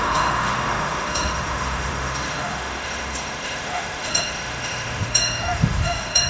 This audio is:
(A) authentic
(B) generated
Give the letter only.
B